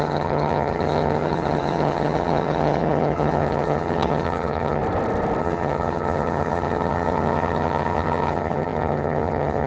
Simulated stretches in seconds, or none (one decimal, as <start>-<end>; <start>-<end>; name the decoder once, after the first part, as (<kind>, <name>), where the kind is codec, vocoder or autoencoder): 0.0-4.8 (vocoder, HiFi-GAN); 5.4-9.7